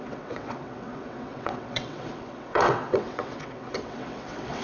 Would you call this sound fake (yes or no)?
yes